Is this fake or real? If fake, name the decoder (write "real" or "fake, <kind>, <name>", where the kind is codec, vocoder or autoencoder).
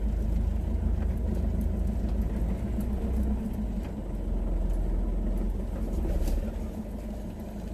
real